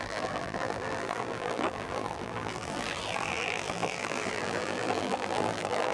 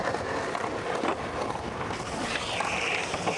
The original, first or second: second